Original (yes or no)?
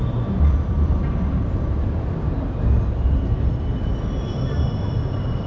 yes